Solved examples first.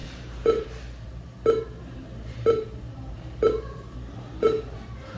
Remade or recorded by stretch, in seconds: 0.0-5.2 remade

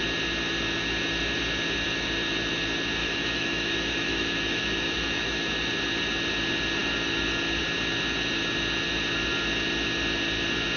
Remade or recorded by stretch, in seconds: 0.0-3.0 recorded; 3.0-5.5 remade; 5.5-10.8 recorded

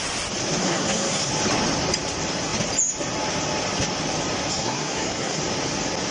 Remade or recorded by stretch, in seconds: 0.0-0.6 recorded; 0.6-1.3 remade; 1.3-4.5 recorded; 4.5-5.4 remade; 5.4-6.1 recorded

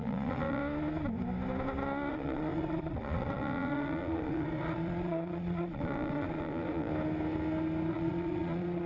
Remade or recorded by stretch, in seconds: 0.0-0.6 remade; 0.6-2.1 recorded; 2.1-6.9 remade; 6.9-7.9 recorded; 7.9-8.9 remade

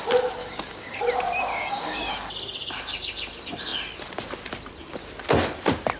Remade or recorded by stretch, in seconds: 0.0-0.4 recorded; 0.4-1.0 remade; 1.0-1.5 recorded; 1.5-2.1 remade; 2.1-6.0 recorded

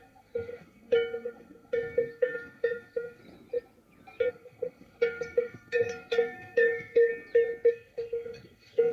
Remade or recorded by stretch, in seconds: 0.0-3.2 remade; 3.2-4.3 recorded; 4.3-7.1 remade; 7.1-7.7 recorded; 7.7-8.9 remade